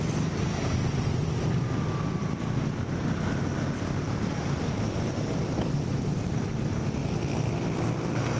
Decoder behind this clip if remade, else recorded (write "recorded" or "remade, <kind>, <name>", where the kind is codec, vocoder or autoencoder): recorded